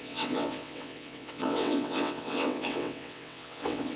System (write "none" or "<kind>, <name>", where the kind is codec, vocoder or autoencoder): vocoder, WaveNeXt